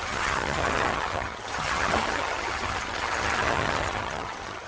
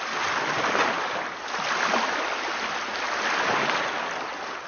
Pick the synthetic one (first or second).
first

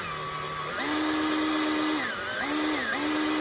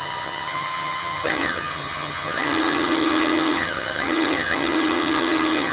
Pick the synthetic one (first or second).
second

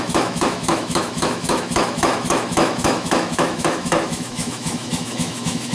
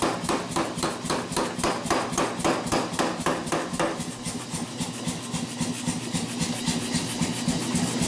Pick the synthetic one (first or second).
first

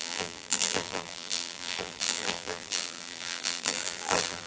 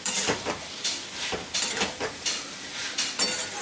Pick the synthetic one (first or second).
first